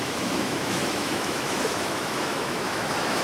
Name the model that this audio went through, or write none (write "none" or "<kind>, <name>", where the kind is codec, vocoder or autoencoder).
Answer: autoencoder, DAC-VAE